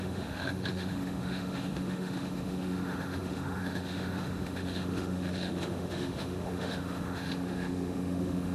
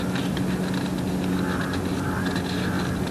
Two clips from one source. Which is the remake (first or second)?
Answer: first